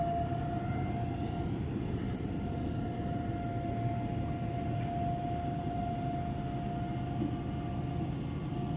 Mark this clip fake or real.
real